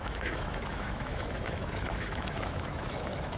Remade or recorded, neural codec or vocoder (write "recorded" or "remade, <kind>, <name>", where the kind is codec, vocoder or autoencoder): remade, autoencoder, DAC-VAE